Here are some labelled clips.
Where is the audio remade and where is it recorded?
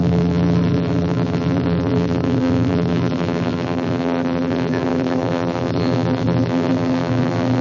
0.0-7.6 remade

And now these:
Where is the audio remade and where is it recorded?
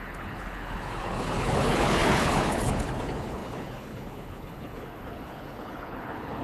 0.0-6.4 remade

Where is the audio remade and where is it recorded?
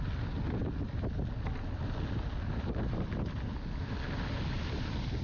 0.0-5.2 recorded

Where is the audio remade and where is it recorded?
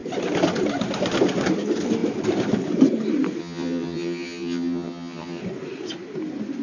0.0-3.4 recorded; 3.4-5.4 remade; 5.4-6.6 recorded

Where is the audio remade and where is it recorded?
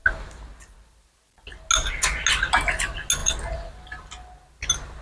0.0-5.0 recorded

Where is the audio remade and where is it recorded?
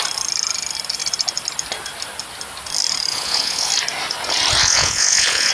0.0-3.1 recorded; 3.1-3.7 remade; 3.7-4.6 recorded; 4.6-5.5 remade